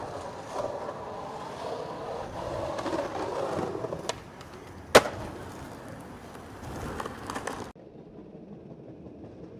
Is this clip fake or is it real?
real